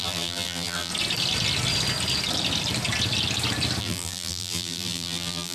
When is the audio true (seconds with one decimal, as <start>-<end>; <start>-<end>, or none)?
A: 0.9-3.8

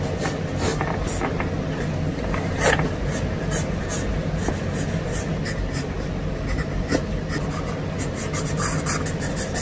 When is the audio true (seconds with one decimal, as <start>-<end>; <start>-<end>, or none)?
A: 0.0-9.6

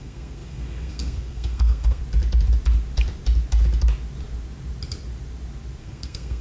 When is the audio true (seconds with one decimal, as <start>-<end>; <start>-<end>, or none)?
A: 2.0-5.8

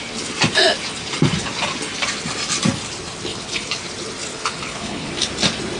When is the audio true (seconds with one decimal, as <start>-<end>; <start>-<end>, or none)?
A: 0.0-3.3; 3.8-4.3; 5.1-5.8

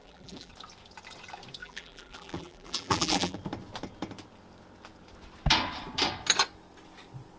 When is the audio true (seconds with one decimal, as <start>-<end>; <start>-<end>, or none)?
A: 0.5-1.6; 3.4-7.4

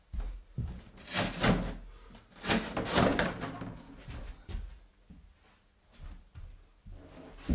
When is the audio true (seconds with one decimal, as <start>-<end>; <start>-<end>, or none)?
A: 0.0-7.5

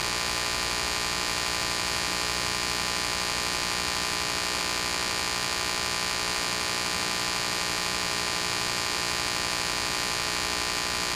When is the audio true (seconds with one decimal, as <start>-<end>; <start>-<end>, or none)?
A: 0.0-11.2

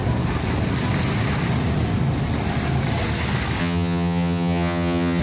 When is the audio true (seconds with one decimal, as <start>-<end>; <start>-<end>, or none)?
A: 0.0-3.6